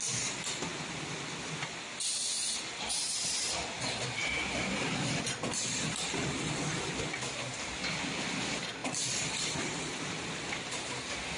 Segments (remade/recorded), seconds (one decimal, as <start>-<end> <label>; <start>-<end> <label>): 0.0-4.2 recorded; 4.2-6.9 remade; 6.9-8.8 recorded; 8.8-9.8 remade; 9.8-11.4 recorded